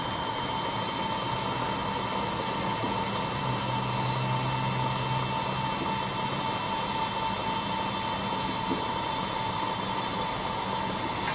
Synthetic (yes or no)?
no